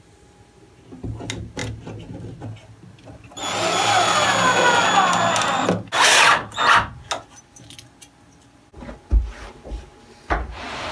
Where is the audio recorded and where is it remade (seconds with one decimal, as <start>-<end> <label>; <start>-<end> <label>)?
0.0-10.9 recorded